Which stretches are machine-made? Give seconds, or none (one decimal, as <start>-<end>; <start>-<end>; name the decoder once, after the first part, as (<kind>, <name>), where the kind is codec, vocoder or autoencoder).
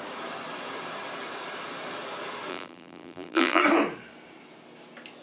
2.5-3.6 (vocoder, BigVGAN v2)